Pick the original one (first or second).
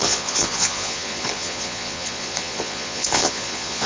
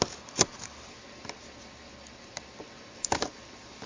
second